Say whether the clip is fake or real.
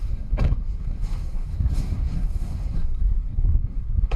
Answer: fake